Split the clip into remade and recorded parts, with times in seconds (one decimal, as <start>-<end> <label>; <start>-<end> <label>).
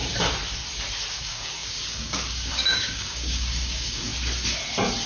0.0-1.2 recorded; 1.2-4.1 remade; 4.1-5.1 recorded